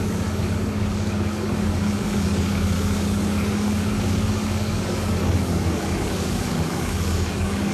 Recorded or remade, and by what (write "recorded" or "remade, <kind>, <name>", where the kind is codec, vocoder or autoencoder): remade, codec, DAC